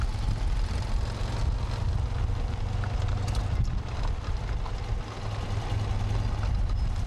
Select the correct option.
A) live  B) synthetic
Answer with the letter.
A